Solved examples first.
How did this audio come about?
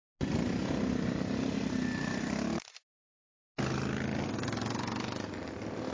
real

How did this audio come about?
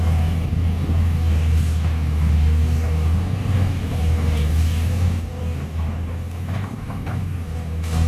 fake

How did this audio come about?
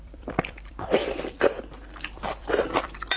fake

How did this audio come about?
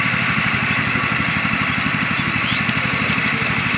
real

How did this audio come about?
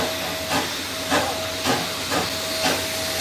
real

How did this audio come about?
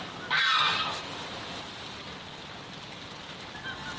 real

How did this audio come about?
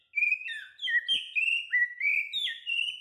real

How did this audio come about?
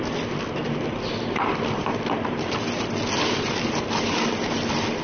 fake